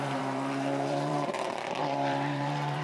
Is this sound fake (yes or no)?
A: yes